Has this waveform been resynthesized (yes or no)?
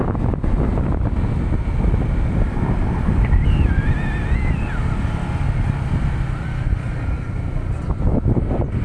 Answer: no